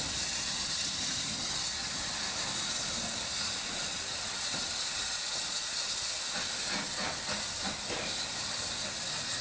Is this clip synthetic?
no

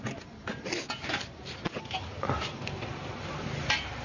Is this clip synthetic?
no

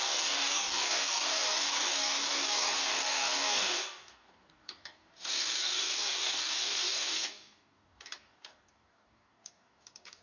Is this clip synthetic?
yes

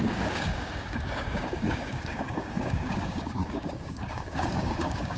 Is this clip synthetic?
yes